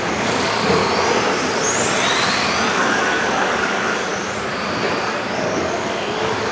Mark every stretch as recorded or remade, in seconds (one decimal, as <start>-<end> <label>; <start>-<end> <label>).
0.0-0.8 remade; 0.8-2.7 recorded; 2.7-4.1 remade; 4.1-5.0 recorded; 5.0-6.5 remade